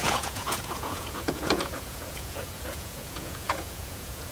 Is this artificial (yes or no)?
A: yes